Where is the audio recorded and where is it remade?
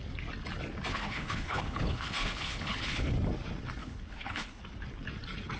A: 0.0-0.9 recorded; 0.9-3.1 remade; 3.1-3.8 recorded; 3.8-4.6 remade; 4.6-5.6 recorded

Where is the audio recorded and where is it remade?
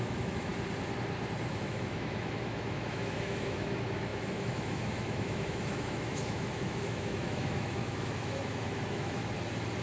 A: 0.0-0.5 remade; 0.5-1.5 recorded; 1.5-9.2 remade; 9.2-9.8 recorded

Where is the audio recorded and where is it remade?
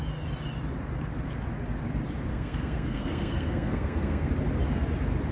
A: 0.0-2.3 recorded; 2.3-4.3 remade; 4.3-5.3 recorded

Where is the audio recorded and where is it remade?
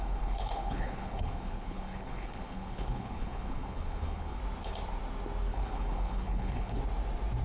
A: 0.0-4.4 remade; 4.4-5.5 recorded; 5.5-6.8 remade; 6.8-7.4 recorded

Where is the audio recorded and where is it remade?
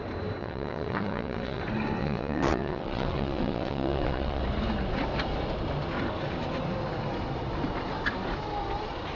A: 0.0-0.4 recorded; 0.4-1.6 remade; 1.6-2.0 recorded; 2.0-4.4 remade; 4.4-9.1 recorded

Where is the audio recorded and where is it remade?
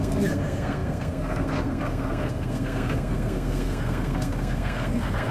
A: 0.0-5.3 remade